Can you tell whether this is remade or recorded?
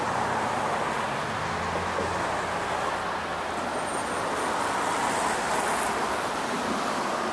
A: recorded